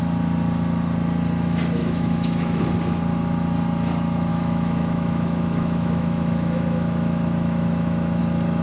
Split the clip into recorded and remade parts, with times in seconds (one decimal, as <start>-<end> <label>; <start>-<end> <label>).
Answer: 0.0-1.8 recorded; 1.8-2.6 remade; 2.6-4.3 recorded; 4.3-8.2 remade; 8.2-8.6 recorded